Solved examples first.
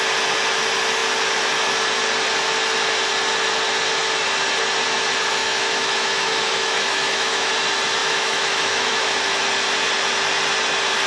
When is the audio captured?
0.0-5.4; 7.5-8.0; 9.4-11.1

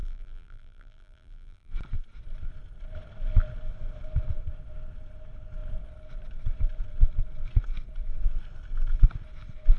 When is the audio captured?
1.7-9.8

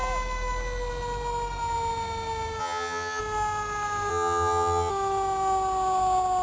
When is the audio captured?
0.0-2.6; 3.2-4.1; 4.9-6.4

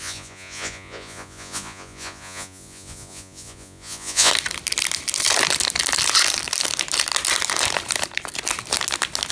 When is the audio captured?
4.3-9.3

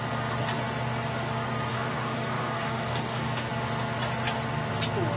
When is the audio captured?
0.0-1.7; 3.5-5.2

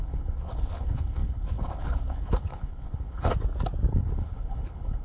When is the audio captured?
3.3-3.9

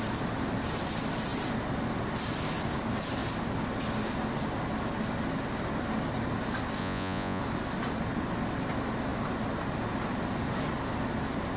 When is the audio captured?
0.0-6.8; 7.4-11.6